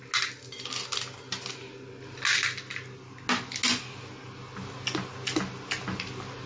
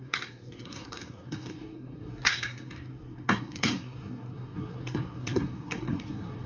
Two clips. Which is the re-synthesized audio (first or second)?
second